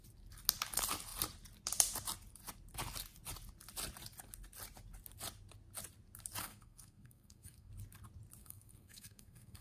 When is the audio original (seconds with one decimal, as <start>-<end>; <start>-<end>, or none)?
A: 0.0-6.4; 7.7-8.4